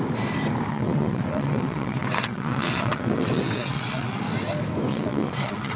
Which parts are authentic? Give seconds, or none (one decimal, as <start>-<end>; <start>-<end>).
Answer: 0.0-0.7; 4.2-4.9